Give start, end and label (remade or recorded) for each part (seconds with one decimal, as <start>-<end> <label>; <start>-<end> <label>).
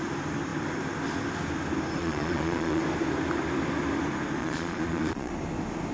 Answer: 0.0-2.0 recorded; 2.0-2.8 remade; 2.8-4.4 recorded; 4.4-5.3 remade; 5.3-5.9 recorded